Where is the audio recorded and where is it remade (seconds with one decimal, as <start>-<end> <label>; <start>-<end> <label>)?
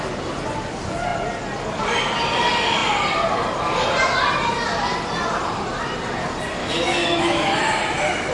0.0-6.6 recorded; 6.6-7.5 remade; 7.5-8.3 recorded